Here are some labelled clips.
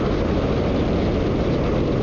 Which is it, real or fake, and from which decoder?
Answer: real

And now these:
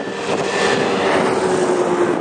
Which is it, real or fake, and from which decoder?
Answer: real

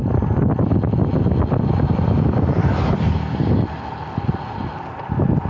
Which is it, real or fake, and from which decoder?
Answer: real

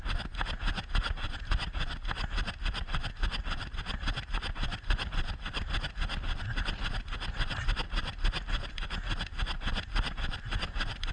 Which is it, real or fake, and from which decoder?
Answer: real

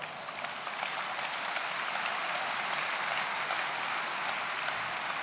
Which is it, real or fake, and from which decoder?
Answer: real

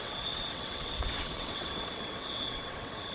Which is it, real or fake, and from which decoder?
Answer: fake, vocoder, WaveNeXt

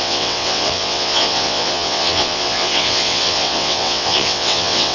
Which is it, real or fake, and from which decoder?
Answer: fake, vocoder, WaveNeXt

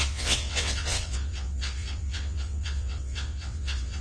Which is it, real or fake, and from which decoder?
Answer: fake, vocoder, WaveNeXt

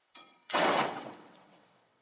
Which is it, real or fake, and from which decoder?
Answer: fake, vocoder, WaveNeXt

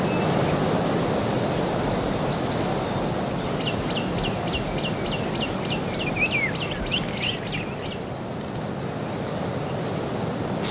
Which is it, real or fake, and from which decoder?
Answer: real